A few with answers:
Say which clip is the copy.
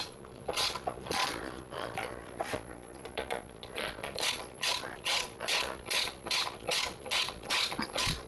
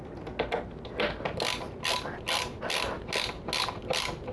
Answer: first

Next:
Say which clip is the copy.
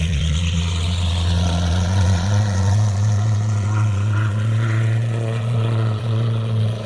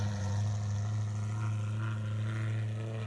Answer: first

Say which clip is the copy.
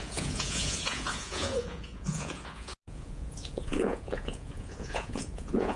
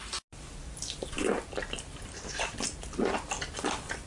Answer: first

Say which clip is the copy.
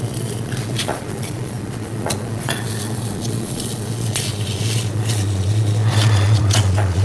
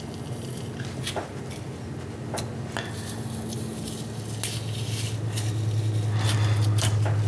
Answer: first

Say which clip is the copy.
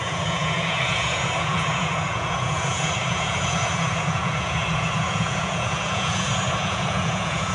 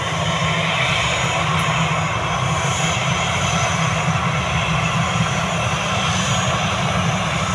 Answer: first